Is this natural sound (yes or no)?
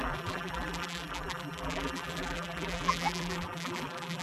no